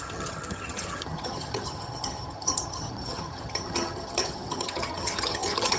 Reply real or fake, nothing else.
fake